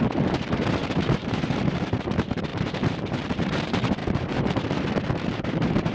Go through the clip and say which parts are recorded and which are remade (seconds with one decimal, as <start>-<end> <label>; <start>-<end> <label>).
0.0-5.9 remade